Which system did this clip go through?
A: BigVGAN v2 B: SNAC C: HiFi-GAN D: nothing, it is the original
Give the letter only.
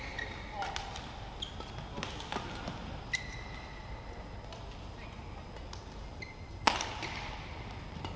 D